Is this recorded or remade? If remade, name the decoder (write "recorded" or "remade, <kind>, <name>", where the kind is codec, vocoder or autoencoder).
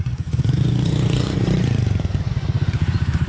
remade, vocoder, Vocos